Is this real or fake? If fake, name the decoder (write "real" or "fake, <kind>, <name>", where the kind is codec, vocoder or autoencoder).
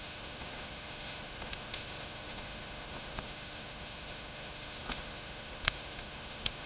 fake, autoencoder, DAC-VAE